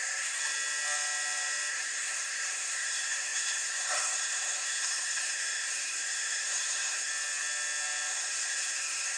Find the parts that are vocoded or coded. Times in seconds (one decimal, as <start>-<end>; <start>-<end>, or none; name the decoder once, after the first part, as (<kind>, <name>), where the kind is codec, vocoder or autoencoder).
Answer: 0.0-0.4 (codec, SNAC); 1.7-7.1; 8.1-9.2